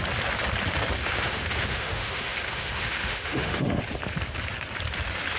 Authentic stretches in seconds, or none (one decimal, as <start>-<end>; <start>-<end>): 0.0-1.0; 3.8-5.4